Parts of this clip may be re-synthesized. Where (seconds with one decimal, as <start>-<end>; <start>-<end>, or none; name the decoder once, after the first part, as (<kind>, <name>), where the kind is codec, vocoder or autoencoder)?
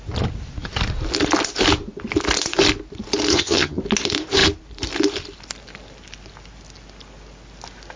3.3-3.8 (vocoder, HiFi-GAN)